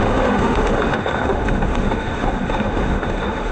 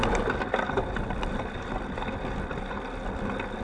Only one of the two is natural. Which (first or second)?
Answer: second